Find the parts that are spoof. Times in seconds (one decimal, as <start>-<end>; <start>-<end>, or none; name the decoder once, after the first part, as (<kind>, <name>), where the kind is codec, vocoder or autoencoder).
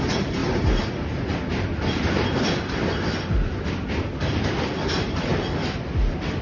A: 0.0-0.4 (vocoder, BigVGAN v2); 4.2-6.4